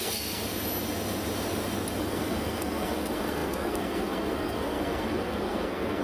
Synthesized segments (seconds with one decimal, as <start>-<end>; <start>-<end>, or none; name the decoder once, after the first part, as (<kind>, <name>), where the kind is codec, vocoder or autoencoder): 0.0-0.4 (codec, SNAC); 2.0-6.0